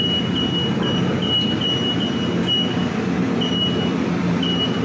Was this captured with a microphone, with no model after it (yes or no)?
yes